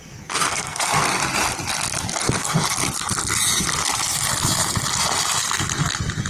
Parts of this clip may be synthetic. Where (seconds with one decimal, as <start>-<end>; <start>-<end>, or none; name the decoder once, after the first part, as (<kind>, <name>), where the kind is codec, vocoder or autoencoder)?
0.0-1.2 (codec, SNAC); 2.2-2.6